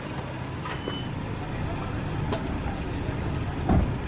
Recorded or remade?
recorded